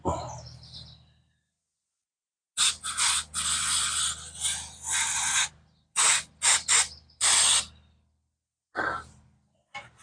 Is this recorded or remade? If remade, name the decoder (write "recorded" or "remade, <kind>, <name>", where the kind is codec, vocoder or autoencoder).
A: recorded